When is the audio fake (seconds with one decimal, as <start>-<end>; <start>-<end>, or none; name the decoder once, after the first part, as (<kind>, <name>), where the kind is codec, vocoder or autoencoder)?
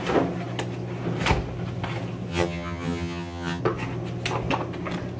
2.3-3.6 (vocoder, HiFi-GAN)